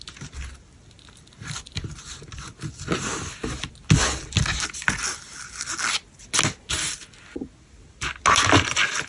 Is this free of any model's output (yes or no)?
yes